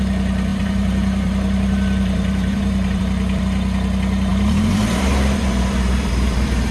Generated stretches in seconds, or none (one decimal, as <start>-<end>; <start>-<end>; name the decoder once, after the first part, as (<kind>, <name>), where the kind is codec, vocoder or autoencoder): 0.5-3.0 (vocoder, BigVGAN v2); 4.3-6.7